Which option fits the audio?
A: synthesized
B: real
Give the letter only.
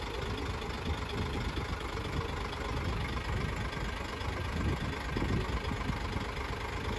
B